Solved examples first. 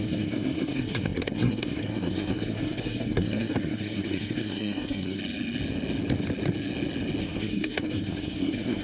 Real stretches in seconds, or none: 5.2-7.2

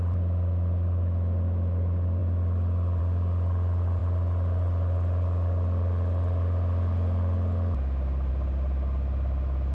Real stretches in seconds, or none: 0.0-9.7